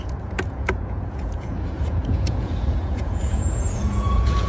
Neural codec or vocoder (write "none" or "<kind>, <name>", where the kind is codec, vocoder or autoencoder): vocoder, Vocos